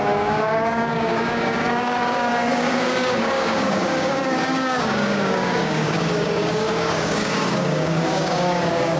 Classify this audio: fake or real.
fake